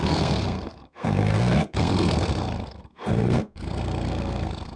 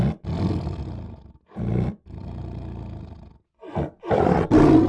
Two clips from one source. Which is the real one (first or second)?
second